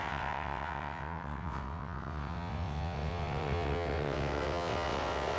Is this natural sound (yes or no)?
no